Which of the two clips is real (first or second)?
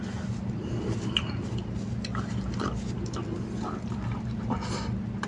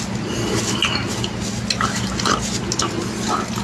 second